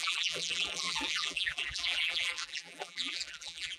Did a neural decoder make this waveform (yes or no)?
yes